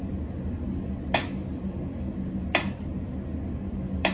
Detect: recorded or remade recorded